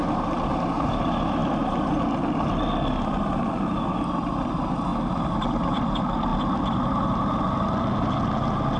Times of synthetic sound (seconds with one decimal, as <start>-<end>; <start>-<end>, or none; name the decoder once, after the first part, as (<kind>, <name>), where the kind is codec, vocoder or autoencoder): 1.4-2.0 (vocoder, BigVGAN v2); 4.9-5.8